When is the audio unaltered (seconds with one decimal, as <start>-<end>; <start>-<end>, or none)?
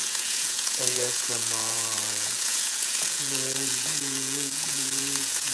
none